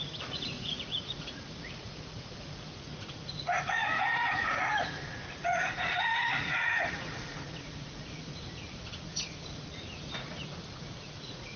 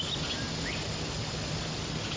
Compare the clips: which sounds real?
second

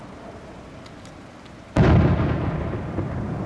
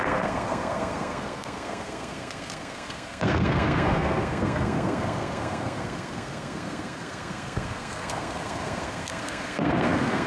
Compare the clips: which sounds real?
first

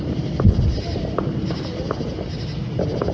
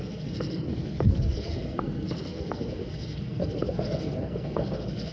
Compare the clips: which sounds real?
first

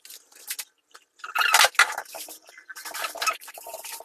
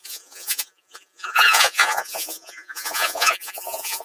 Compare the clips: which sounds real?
first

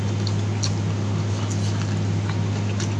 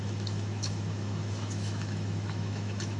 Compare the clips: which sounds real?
first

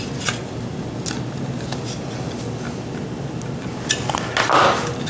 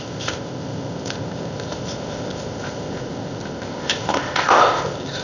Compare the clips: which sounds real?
first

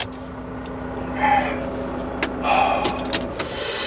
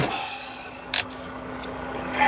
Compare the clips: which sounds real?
first